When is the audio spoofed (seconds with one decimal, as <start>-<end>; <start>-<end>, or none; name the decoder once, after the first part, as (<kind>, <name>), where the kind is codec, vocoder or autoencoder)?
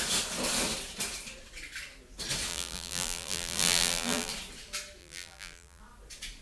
2.5-4.3 (vocoder, BigVGAN v2); 5.0-5.8